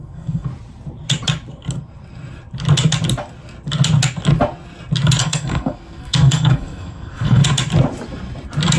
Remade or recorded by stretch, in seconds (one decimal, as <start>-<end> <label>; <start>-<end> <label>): 0.0-0.5 remade; 0.5-5.2 recorded; 5.2-7.4 remade; 7.4-8.8 recorded